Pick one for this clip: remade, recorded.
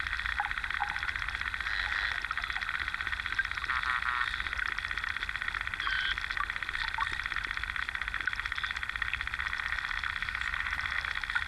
recorded